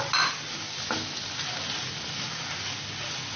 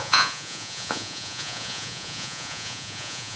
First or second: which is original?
first